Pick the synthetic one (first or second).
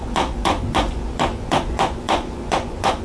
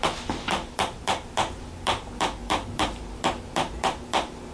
first